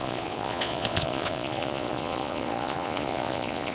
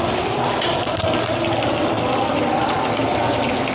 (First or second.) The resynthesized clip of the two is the first